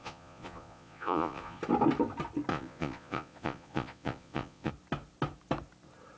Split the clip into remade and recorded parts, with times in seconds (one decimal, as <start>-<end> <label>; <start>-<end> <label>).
0.0-1.6 remade; 1.6-2.5 recorded; 2.5-4.7 remade; 4.7-6.2 recorded